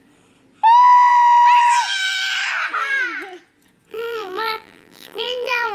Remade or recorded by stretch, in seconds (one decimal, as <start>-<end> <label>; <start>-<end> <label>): 0.0-3.9 recorded; 3.9-5.7 remade